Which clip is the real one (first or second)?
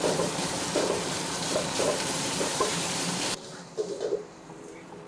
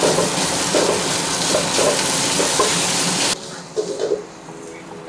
second